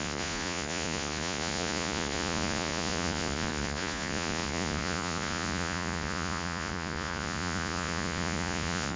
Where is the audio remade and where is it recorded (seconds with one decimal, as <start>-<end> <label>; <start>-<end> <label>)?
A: 0.0-9.0 remade